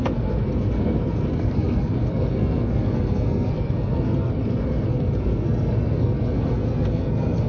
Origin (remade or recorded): remade